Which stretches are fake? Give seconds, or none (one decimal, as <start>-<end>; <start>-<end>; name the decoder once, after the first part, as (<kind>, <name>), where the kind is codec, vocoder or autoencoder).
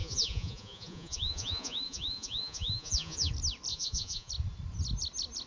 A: 0.0-3.3 (vocoder, Vocos); 3.7-4.3